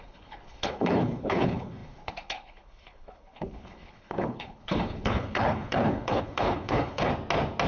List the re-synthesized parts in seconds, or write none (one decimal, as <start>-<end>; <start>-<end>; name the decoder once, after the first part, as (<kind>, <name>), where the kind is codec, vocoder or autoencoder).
0.0-7.1 (codec, HILCodec)